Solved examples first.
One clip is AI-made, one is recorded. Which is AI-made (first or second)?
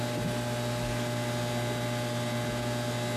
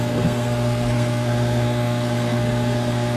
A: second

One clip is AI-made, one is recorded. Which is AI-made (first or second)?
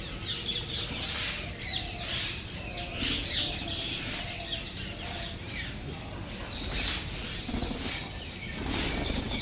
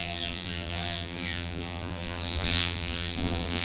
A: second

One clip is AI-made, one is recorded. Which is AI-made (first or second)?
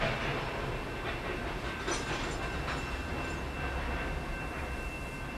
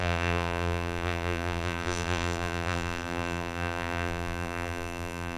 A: second